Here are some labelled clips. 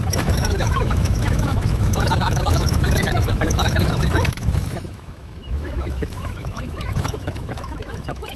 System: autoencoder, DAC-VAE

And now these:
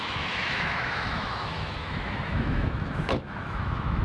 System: autoencoder, DAC-VAE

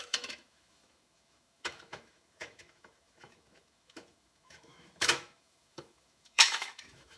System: autoencoder, DAC-VAE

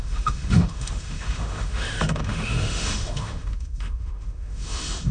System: autoencoder, DAC-VAE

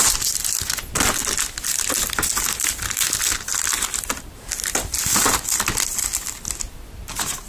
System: none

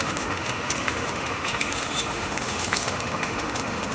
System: autoencoder, DAC-VAE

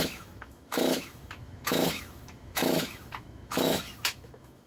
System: autoencoder, DAC-VAE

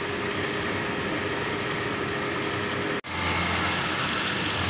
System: none